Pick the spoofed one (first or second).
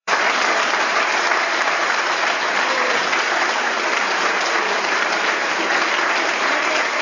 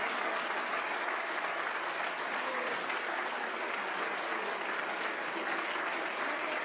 first